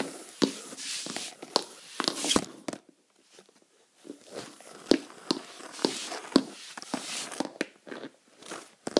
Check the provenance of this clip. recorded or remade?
recorded